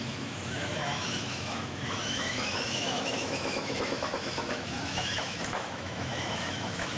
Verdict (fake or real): fake